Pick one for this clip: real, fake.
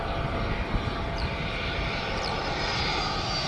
real